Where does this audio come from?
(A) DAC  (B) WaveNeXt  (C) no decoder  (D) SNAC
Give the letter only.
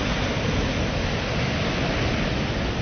C